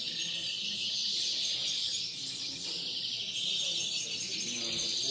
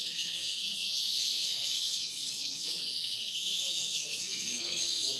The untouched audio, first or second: first